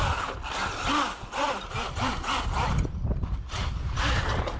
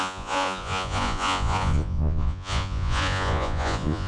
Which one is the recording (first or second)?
first